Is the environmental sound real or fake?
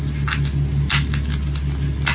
real